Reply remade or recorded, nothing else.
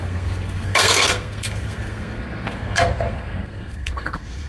remade